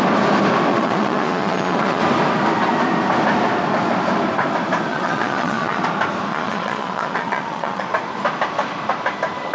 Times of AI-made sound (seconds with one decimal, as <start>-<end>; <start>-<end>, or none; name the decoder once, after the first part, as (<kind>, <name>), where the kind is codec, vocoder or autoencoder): 0.7-2.0 (vocoder, Vocos); 4.9-5.8; 6.3-7.8